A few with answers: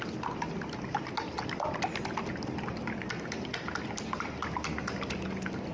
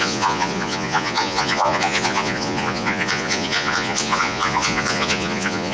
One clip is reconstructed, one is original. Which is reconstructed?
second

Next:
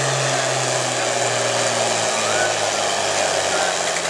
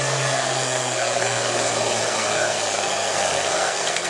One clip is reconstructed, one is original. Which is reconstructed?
second